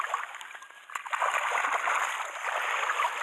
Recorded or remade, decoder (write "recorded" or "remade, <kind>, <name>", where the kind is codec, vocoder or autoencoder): recorded